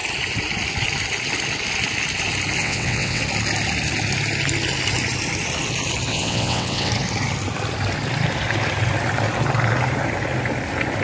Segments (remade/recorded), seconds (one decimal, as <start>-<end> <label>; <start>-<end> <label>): 0.0-2.6 recorded; 2.6-3.2 remade; 3.2-6.1 recorded; 6.1-6.9 remade; 6.9-11.0 recorded